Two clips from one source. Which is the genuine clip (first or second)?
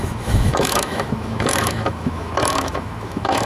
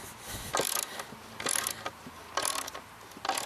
second